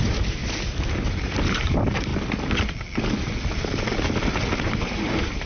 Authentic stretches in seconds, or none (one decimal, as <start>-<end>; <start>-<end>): 0.4-1.1; 2.1-4.6